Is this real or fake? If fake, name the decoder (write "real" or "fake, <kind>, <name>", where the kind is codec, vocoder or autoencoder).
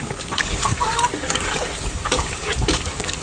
fake, codec, DAC